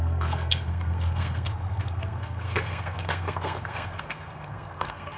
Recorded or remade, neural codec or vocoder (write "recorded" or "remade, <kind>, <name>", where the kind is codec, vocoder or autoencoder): remade, codec, SNAC